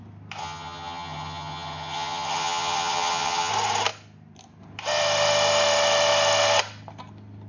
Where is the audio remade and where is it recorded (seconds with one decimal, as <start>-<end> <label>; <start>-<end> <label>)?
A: 0.0-0.4 recorded; 0.4-3.5 remade; 3.5-7.5 recorded